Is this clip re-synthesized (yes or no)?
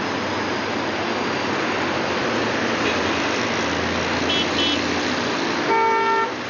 no